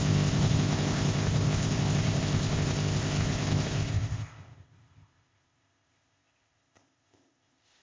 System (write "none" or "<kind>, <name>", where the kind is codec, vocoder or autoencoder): codec, ZipCodec